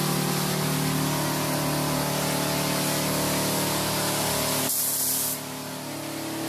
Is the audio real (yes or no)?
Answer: yes